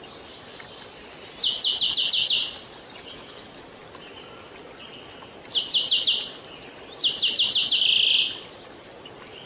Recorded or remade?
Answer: recorded